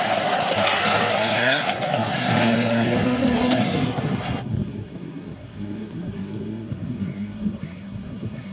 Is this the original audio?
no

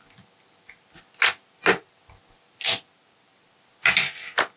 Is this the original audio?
yes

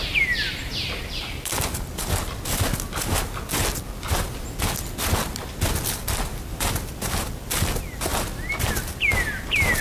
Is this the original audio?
yes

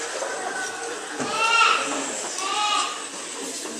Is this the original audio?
yes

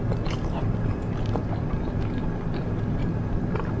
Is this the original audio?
yes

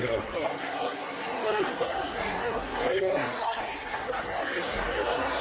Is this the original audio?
no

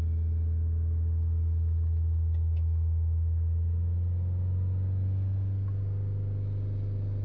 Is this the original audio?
yes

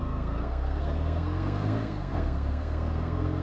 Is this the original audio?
no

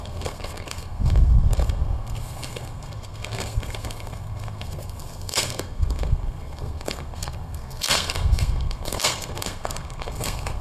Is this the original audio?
no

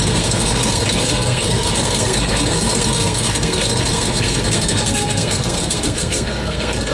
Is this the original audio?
no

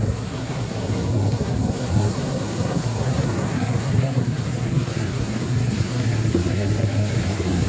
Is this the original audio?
no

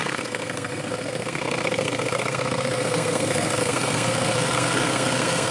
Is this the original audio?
no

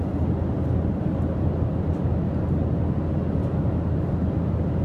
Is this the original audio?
yes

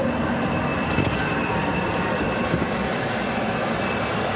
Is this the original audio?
yes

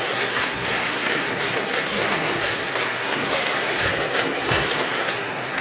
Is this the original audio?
no